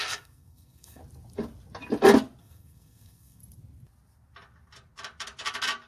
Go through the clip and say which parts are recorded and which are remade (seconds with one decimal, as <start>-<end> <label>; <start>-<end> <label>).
0.0-1.0 remade; 1.0-2.4 recorded; 2.4-3.4 remade; 3.4-5.9 recorded